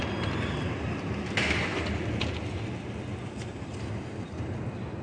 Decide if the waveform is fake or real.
real